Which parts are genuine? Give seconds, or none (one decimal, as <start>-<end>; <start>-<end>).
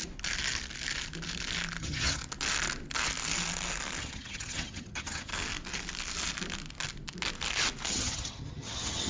0.0-1.8; 2.2-4.0; 5.3-7.9